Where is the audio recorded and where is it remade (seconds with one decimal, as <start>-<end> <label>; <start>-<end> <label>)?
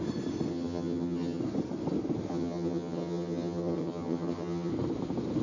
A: 0.0-0.5 recorded; 0.5-1.4 remade; 1.4-2.3 recorded; 2.3-4.7 remade; 4.7-5.4 recorded